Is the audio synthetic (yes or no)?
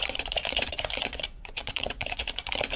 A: yes